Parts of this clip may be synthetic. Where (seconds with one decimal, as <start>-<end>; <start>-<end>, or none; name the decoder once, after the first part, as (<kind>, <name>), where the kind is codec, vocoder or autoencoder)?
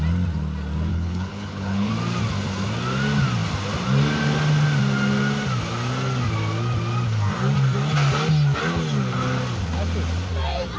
0.9-1.9 (codec, HILCodec)